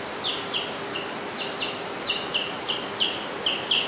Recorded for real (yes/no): yes